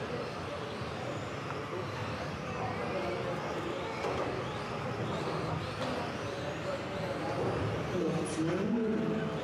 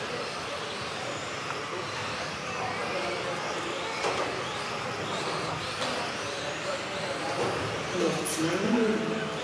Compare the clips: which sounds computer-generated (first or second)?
second